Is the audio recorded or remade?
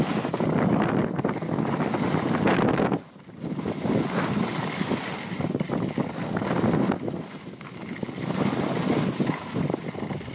recorded